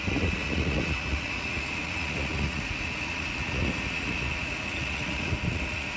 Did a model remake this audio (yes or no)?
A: yes